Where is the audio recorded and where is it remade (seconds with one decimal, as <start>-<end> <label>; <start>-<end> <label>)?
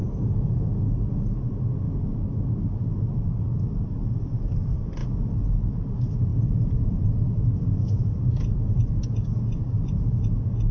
0.0-0.6 remade; 0.6-6.3 recorded; 6.3-10.7 remade